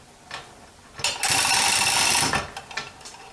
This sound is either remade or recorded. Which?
recorded